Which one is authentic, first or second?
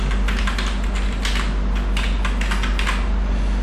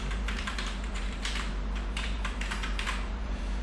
first